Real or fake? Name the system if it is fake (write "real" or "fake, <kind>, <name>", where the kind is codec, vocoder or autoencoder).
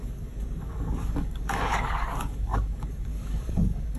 fake, codec, DAC